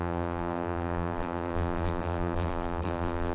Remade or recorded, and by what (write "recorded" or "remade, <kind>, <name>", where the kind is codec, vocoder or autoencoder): remade, vocoder, BigVGAN v2